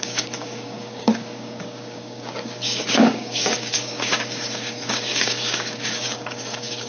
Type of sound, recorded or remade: remade